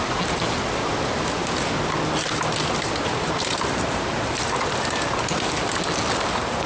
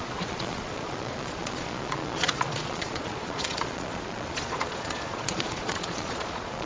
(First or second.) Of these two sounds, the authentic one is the first